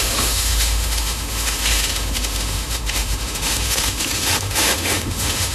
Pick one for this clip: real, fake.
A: fake